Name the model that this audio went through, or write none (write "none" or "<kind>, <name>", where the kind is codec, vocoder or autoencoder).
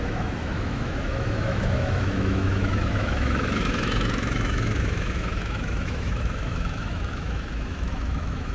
autoencoder, DAC-VAE